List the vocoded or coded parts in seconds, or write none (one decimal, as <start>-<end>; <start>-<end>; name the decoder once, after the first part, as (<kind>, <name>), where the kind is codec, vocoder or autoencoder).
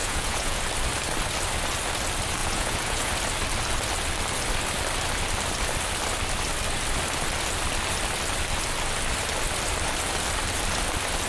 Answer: 0.0-0.6 (vocoder, Vocos); 2.4-3.1